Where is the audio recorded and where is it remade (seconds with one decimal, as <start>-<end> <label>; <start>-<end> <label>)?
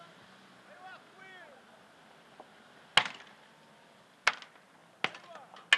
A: 0.0-5.8 recorded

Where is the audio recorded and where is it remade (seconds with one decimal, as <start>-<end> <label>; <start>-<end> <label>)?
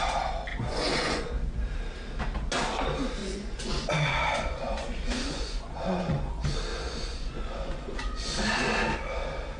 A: 0.0-0.5 recorded; 0.5-1.3 remade; 1.3-3.2 recorded; 3.2-6.3 remade; 6.3-6.7 recorded; 6.7-8.5 remade; 8.5-9.6 recorded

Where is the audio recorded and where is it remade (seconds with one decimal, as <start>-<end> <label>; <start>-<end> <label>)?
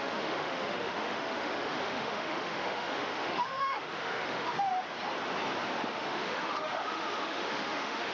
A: 0.0-4.7 remade; 4.7-5.9 recorded; 5.9-8.1 remade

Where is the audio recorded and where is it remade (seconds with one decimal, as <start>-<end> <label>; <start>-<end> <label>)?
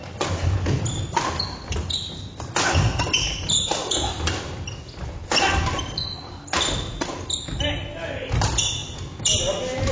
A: 0.0-9.9 recorded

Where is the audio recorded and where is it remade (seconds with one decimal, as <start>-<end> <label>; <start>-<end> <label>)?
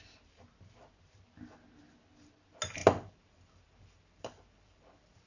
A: 0.0-2.8 recorded; 2.8-5.3 remade